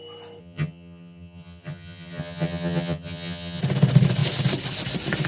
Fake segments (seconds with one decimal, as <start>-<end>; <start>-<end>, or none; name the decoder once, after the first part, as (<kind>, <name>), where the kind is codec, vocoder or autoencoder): 0.4-3.6 (vocoder, HiFi-GAN)

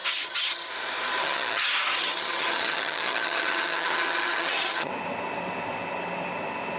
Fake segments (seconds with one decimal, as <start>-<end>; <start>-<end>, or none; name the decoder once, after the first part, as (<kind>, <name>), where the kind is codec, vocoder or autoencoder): 0.0-0.7 (vocoder, HiFi-GAN); 1.2-4.9

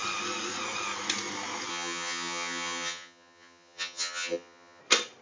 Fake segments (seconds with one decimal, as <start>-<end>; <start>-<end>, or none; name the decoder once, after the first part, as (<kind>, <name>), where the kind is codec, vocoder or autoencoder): 1.7-4.8 (vocoder, HiFi-GAN)